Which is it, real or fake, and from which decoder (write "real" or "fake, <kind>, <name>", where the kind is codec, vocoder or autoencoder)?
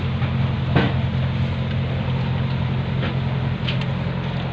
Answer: real